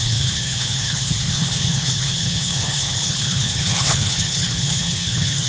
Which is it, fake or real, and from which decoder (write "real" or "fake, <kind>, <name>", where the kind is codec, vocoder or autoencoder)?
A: fake, codec, HILCodec